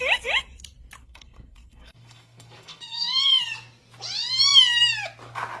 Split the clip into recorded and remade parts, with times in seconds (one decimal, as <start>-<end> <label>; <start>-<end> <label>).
0.0-1.0 recorded; 1.0-3.4 remade; 3.4-5.6 recorded